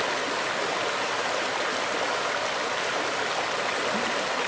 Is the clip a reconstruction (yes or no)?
no